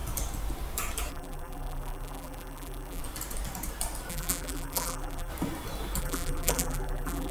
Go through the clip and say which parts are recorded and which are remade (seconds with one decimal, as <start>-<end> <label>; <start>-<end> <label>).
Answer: 0.0-1.1 recorded; 1.1-3.0 remade; 3.0-4.1 recorded; 4.1-5.3 remade; 5.3-6.0 recorded; 6.0-7.3 remade